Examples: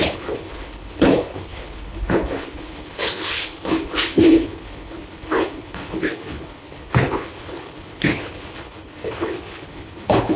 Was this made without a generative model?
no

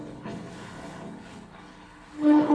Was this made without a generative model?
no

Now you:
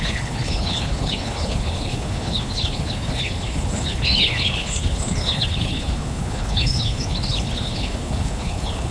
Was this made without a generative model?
no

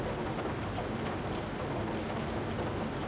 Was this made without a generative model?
yes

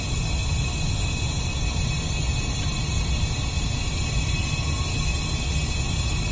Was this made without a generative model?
yes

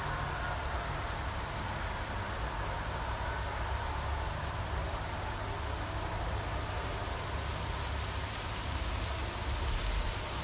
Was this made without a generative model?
yes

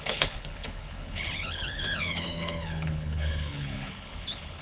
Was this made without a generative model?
no